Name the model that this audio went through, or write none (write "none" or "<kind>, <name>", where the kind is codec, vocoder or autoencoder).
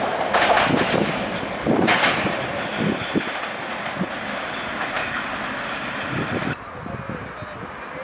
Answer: none